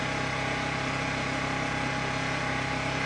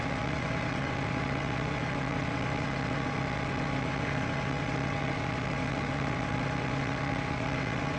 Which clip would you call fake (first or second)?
second